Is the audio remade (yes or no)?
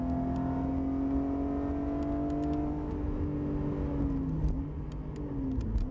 no